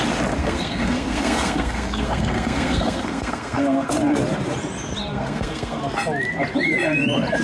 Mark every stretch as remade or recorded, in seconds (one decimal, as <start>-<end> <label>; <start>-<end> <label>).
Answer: 0.0-0.4 recorded; 0.4-3.9 remade; 3.9-5.1 recorded; 5.1-5.8 remade; 5.8-7.4 recorded